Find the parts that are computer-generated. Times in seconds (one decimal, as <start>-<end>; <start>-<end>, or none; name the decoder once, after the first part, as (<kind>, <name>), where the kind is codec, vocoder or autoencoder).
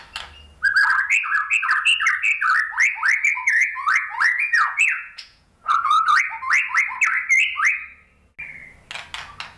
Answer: 3.3-6.2 (vocoder, Vocos)